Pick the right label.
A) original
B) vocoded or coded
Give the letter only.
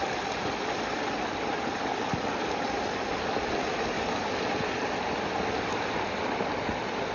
A